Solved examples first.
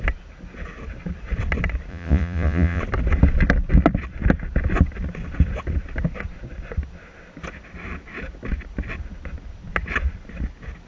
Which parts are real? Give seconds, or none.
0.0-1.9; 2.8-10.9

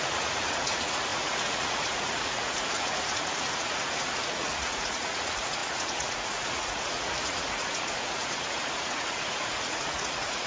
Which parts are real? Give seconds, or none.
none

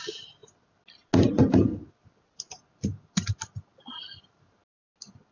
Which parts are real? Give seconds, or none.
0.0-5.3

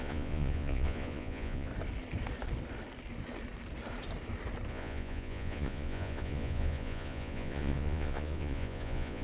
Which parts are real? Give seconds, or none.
1.7-4.7

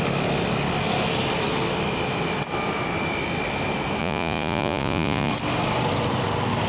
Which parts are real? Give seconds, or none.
0.0-4.0; 5.3-6.7

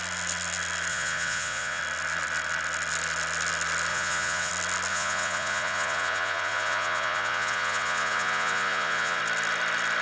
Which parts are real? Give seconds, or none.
0.0-0.9; 1.8-3.9; 4.5-4.9; 9.2-10.0

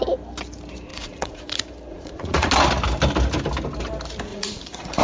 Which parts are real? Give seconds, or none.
0.0-0.9; 1.4-1.9; 2.5-4.3

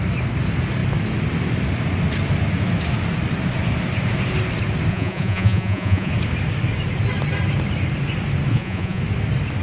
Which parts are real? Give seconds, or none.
0.0-4.9; 6.1-8.5; 9.0-9.6